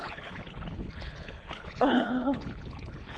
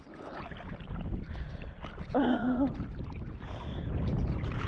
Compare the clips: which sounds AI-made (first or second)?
first